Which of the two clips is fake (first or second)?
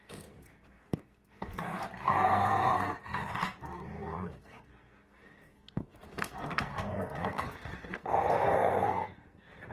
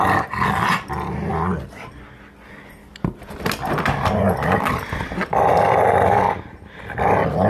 first